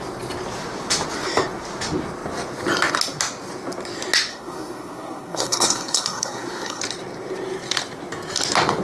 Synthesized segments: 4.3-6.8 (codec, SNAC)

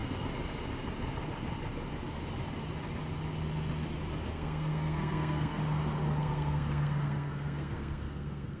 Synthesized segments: 4.3-5.6 (codec, SNAC); 6.2-8.6

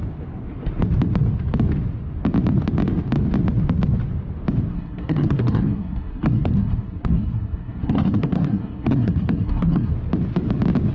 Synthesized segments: 4.7-9.9 (codec, SNAC)